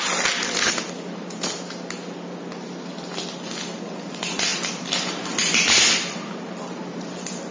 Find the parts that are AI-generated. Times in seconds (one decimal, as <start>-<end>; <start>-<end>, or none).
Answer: none